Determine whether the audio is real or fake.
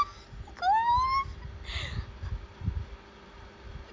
real